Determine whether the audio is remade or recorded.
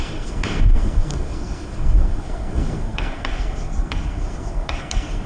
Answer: remade